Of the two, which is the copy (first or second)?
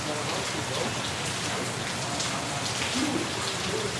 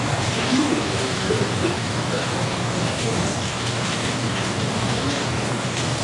second